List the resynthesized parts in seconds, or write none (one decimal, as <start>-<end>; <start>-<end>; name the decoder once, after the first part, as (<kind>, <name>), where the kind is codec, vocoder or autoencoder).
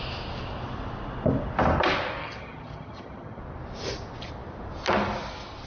2.2-3.4 (vocoder, HiFi-GAN)